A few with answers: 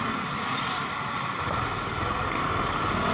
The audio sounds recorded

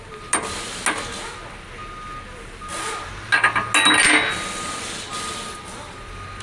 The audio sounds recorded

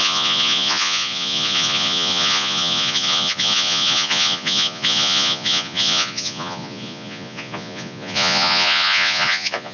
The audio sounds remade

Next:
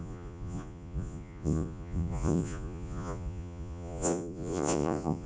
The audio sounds remade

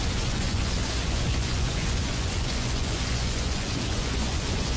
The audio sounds remade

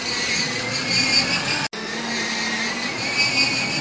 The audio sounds recorded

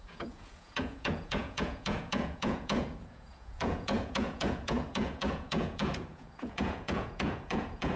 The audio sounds remade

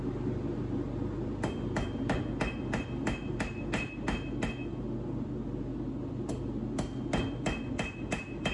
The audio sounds recorded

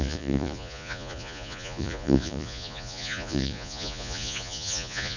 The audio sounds remade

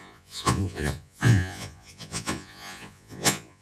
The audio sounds remade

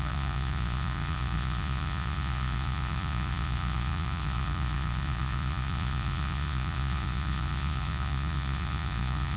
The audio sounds remade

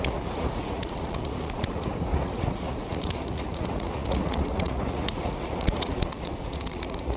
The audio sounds remade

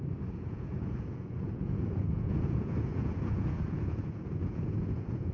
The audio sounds remade